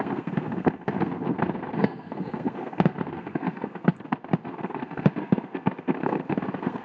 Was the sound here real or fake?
fake